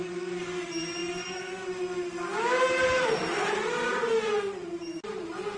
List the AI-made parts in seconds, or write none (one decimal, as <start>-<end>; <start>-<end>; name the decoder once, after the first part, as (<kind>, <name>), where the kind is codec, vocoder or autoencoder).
none